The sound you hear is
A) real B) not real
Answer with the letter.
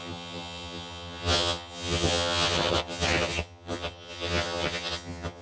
B